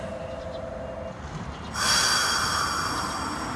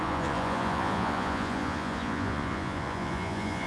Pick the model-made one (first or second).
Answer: second